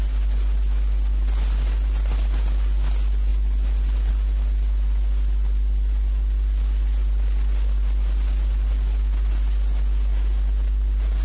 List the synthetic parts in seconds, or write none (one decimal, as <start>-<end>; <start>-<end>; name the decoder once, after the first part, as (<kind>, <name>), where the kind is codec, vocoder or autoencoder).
none